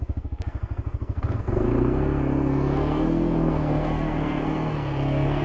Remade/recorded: remade